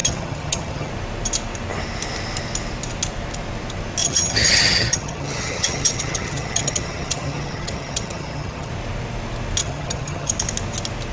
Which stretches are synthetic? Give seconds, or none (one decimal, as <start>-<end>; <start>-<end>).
0.0-0.9; 4.0-8.7; 9.6-10.3